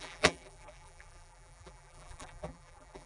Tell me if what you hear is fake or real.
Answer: fake